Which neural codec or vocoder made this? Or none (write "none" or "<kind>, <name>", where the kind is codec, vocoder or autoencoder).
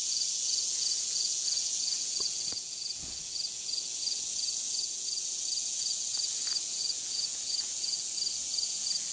vocoder, Vocos